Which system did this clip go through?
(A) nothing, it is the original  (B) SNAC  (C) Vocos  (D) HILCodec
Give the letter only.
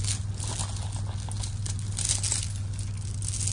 A